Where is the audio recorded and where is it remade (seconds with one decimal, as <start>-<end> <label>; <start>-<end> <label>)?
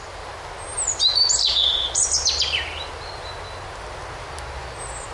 0.0-0.7 recorded; 0.7-3.3 remade; 3.3-5.1 recorded